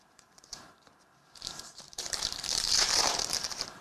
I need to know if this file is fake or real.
fake